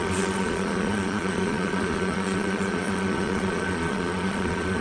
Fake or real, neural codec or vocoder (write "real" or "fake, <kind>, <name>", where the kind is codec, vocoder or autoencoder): fake, vocoder, Vocos